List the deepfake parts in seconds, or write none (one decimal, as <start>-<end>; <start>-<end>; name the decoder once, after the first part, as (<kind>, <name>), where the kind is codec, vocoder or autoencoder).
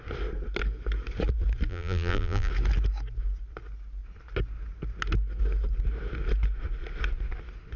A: 1.7-2.5 (vocoder, BigVGAN v2)